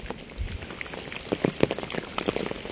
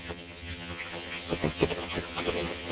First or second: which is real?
first